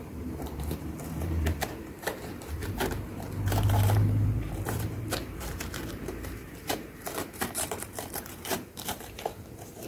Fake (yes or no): yes